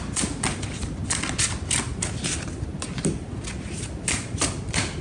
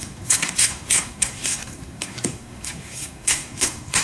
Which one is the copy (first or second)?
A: second